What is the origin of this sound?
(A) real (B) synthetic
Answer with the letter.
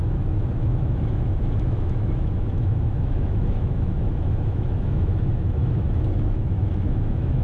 B